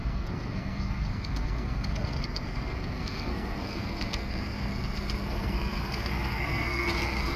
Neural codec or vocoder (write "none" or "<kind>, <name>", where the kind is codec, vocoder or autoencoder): codec, SNAC